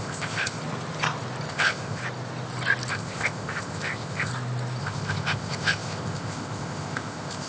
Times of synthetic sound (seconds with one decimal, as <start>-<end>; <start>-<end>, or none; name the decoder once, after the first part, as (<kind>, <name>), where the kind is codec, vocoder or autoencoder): 0.0-0.6 (codec, ZipCodec); 1.5-2.0; 2.9-4.3; 4.8-7.5